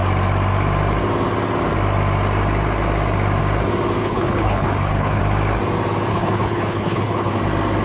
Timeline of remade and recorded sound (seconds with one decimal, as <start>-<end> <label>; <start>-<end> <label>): 0.0-4.0 recorded; 4.0-5.2 remade; 5.2-6.1 recorded; 6.1-7.3 remade; 7.3-7.8 recorded